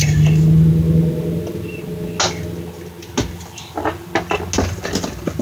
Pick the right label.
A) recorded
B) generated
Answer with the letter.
A